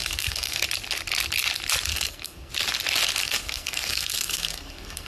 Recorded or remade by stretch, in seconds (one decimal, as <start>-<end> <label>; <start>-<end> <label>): 0.0-0.6 remade; 0.6-1.9 recorded; 1.9-2.5 remade; 2.5-3.2 recorded; 3.2-5.1 remade